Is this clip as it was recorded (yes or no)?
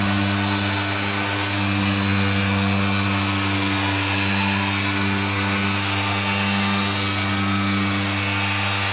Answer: yes